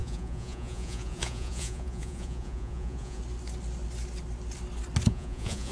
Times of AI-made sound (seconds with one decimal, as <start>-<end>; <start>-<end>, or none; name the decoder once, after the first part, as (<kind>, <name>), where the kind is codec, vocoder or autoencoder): 0.0-3.2 (vocoder, Vocos); 5.1-5.7